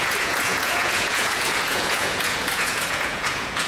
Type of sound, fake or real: fake